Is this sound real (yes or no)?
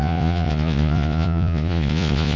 no